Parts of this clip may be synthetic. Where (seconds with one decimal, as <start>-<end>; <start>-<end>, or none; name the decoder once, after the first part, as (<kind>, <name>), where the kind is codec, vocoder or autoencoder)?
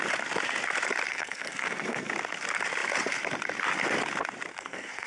1.1-2.1 (codec, SNAC); 4.5-5.1